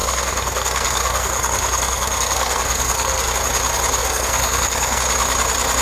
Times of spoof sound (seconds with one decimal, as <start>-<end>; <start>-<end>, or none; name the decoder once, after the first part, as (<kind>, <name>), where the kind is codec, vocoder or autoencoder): 0.0-3.3 (codec, SNAC); 4.0-5.0